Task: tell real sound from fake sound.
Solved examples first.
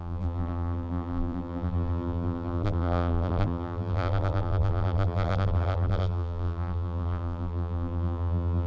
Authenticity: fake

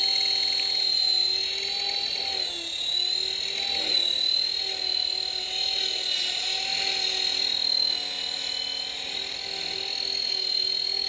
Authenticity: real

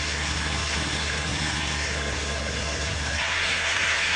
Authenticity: fake